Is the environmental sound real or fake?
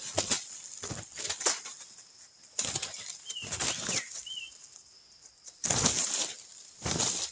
real